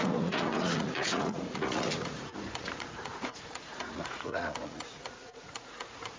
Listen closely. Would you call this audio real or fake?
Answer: fake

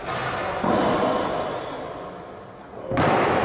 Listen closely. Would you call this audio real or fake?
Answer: real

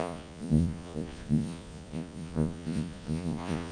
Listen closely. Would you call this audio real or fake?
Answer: fake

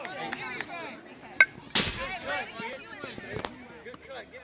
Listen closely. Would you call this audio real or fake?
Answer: real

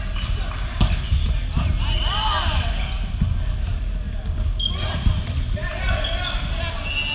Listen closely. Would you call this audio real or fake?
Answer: real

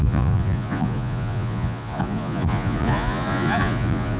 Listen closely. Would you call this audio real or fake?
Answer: fake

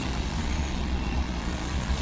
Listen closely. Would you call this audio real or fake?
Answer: fake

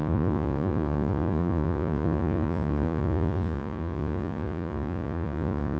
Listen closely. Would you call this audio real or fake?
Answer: fake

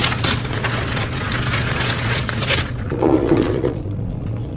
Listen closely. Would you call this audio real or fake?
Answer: fake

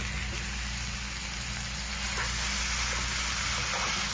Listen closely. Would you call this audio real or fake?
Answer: real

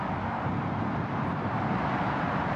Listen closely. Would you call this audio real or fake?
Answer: real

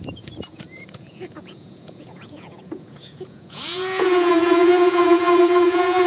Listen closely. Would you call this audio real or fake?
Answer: fake